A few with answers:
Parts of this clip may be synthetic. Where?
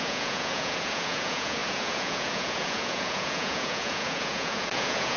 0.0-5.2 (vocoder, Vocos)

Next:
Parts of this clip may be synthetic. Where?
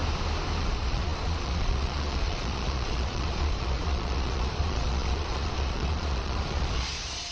0.6-7.3 (vocoder, Vocos)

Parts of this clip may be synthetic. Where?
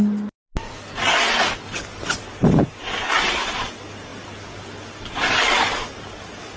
none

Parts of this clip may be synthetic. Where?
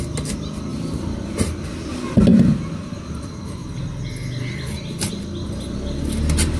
0.7-1.6 (vocoder, BigVGAN v2); 2.3-2.9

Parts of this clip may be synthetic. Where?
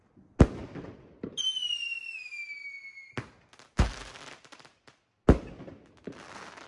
none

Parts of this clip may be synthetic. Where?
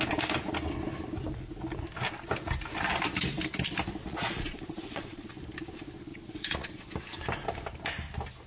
4.0-5.3 (vocoder, Vocos); 6.1-6.8